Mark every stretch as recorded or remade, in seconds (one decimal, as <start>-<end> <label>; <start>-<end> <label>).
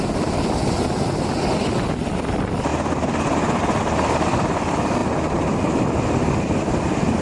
0.0-7.2 recorded